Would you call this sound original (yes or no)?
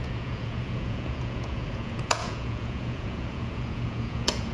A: no